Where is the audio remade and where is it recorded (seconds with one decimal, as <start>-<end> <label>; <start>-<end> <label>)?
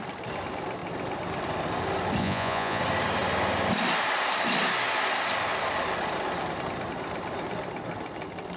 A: 0.0-2.2 recorded; 2.2-2.8 remade; 2.8-8.6 recorded